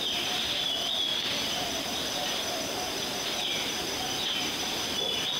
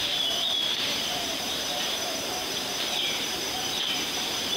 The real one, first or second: first